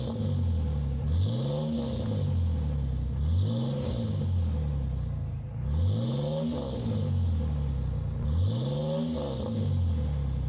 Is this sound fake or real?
real